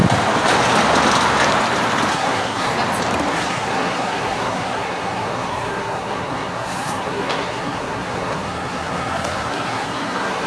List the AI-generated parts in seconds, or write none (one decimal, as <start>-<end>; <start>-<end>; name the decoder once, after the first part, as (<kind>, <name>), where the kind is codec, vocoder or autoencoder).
2.1-2.7 (codec, SNAC); 3.3-10.5